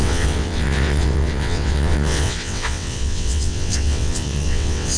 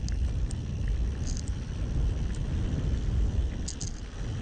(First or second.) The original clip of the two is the second